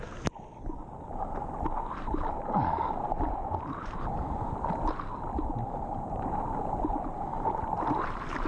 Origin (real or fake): real